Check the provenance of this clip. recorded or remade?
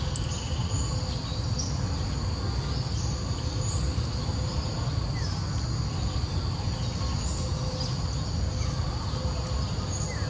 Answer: recorded